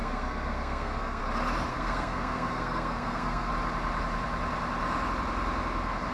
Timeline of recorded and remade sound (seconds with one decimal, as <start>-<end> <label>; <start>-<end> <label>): 0.0-1.2 remade; 1.2-1.7 recorded; 1.7-3.5 remade; 3.5-6.1 recorded